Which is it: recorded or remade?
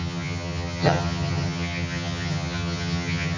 remade